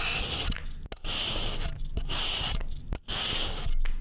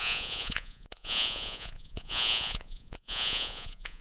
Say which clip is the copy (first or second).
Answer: second